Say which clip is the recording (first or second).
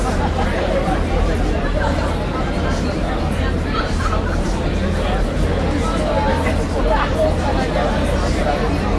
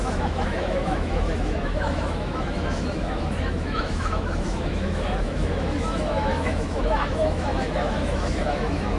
first